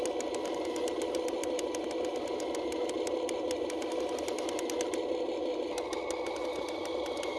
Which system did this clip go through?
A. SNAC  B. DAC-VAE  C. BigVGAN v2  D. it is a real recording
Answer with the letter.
D